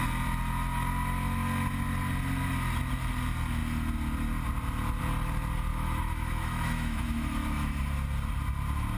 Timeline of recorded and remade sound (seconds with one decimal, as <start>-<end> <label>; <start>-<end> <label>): 0.0-5.7 recorded; 5.7-7.8 remade; 7.8-9.0 recorded